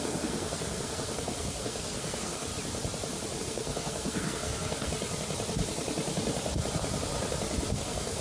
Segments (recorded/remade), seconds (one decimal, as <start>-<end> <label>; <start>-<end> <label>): 0.0-2.5 remade; 2.5-3.4 recorded; 3.4-4.9 remade; 4.9-7.7 recorded; 7.7-8.2 remade